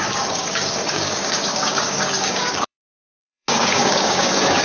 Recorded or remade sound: remade